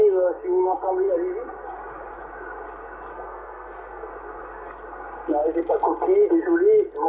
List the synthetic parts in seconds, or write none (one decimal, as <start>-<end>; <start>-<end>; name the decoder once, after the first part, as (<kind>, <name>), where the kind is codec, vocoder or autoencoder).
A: 3.1-4.1 (codec, SNAC)